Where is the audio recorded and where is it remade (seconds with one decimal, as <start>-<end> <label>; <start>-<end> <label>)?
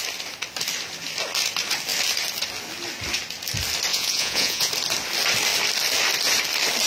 0.0-3.9 recorded; 3.9-4.7 remade; 4.7-6.9 recorded